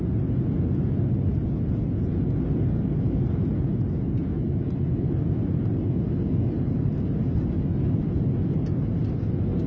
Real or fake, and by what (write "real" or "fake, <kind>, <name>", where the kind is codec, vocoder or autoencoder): real